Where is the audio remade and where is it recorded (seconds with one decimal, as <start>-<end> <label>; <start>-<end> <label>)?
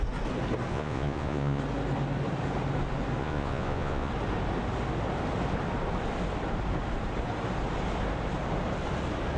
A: 0.0-0.7 recorded; 0.7-1.6 remade; 1.6-3.2 recorded; 3.2-4.1 remade; 4.1-9.4 recorded